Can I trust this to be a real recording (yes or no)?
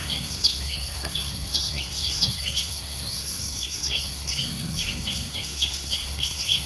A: no